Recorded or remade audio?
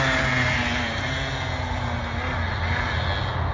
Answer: recorded